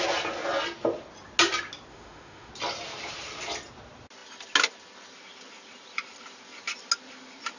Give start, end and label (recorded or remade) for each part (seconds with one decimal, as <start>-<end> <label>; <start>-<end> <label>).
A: 0.0-1.9 recorded; 1.9-2.5 remade; 2.5-7.6 recorded